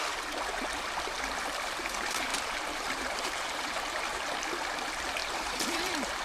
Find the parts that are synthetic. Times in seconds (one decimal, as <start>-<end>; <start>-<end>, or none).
2.3-4.2; 5.2-6.2

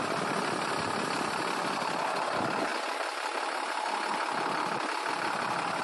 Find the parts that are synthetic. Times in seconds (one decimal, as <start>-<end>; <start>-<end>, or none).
none